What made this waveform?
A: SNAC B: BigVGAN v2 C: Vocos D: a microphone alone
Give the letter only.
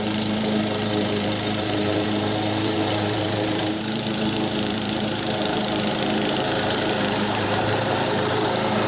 B